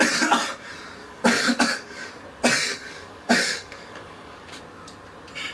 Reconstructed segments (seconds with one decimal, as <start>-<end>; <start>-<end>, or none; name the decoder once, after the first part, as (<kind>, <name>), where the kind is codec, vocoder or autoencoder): 1.0-2.1 (codec, DAC); 2.7-4.6